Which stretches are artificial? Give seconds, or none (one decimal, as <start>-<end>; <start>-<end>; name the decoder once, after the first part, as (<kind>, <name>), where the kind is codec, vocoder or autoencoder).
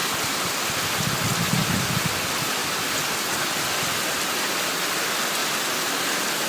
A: 2.6-4.7 (vocoder, BigVGAN v2)